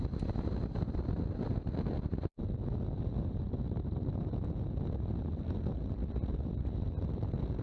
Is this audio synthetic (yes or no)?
no